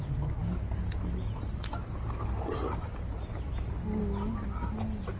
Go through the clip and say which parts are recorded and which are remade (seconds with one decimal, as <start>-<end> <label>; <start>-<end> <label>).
0.0-5.2 recorded